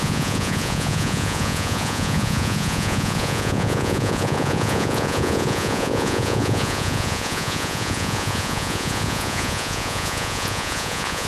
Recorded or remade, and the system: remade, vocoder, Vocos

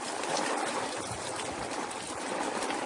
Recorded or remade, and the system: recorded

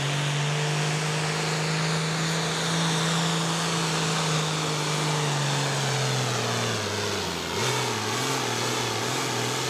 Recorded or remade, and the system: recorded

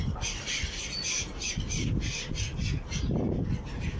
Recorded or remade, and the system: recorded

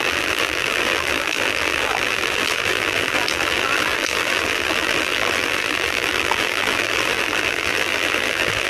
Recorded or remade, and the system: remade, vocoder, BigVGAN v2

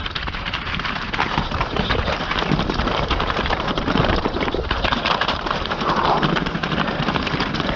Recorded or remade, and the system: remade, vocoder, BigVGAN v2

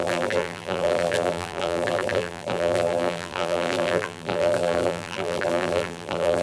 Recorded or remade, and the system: remade, vocoder, BigVGAN v2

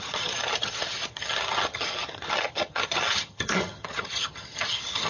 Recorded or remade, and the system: remade, vocoder, HiFi-GAN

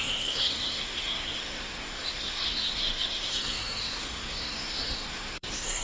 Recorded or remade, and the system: remade, codec, SNAC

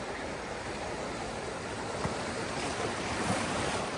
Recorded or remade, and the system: remade, vocoder, BigVGAN v2